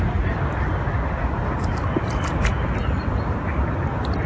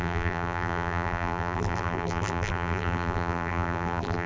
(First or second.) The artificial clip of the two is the second